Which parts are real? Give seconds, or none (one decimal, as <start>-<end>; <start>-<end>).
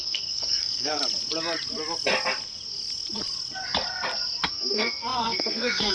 1.0-4.5